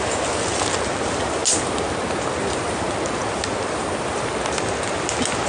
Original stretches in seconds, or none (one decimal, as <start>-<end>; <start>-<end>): 0.0-5.5